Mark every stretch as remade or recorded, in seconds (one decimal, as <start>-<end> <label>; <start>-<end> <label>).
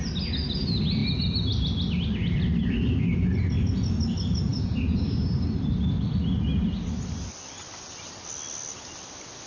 0.0-9.5 recorded